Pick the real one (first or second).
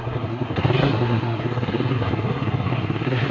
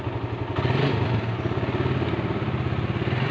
second